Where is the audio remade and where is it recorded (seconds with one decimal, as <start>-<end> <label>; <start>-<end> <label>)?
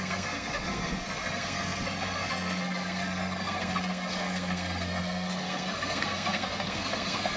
0.0-7.4 remade